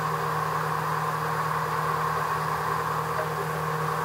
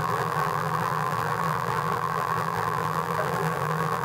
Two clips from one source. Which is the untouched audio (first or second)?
first